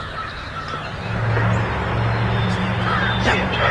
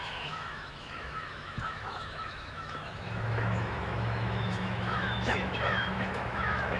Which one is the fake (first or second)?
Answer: second